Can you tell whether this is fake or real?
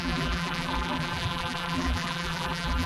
fake